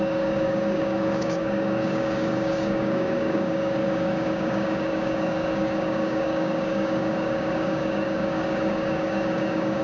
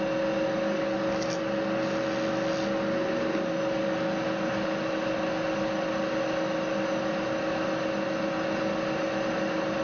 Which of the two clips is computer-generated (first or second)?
first